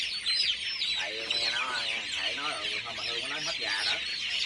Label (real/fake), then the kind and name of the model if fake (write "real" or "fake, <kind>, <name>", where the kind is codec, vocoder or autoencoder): real